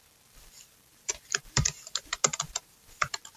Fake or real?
fake